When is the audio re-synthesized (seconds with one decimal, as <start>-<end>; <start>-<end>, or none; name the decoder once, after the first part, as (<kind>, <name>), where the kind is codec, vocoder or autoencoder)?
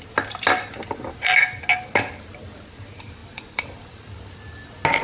3.2-4.3 (vocoder, BigVGAN v2)